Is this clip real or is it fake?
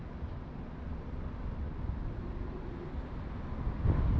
real